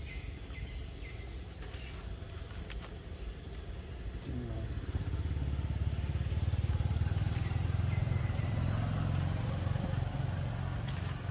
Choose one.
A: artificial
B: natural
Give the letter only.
B